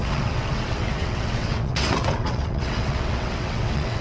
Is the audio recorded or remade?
remade